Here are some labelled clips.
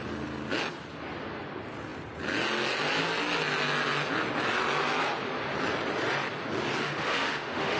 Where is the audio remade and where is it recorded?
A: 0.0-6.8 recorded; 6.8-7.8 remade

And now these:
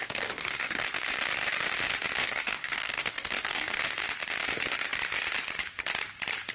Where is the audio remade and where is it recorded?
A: 0.0-0.8 remade; 0.8-2.2 recorded; 2.2-3.8 remade; 3.8-6.5 recorded

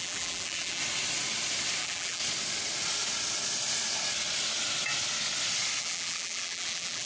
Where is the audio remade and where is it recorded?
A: 0.0-0.8 remade; 0.8-1.8 recorded; 1.8-2.2 remade; 2.2-5.8 recorded; 5.8-7.1 remade

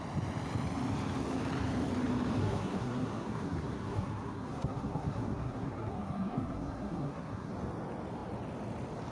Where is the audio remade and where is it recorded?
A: 0.0-2.4 recorded; 2.4-7.5 remade; 7.5-9.1 recorded

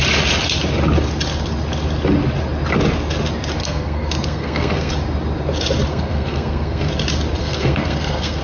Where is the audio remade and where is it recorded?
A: 0.0-3.6 recorded; 3.6-4.9 remade; 4.9-5.9 recorded; 5.9-6.9 remade; 6.9-7.4 recorded; 7.4-8.4 remade

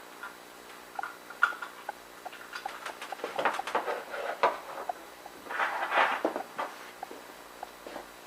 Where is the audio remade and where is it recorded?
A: 0.0-8.3 recorded

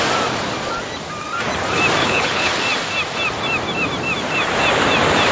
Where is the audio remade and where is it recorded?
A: 0.0-2.0 recorded; 2.0-2.5 remade; 2.5-5.3 recorded

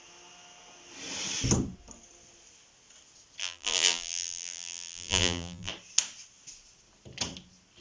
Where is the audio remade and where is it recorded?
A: 0.0-3.4 recorded; 3.4-5.7 remade; 5.7-7.8 recorded